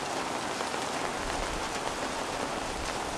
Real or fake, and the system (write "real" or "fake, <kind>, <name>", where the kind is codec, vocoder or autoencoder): real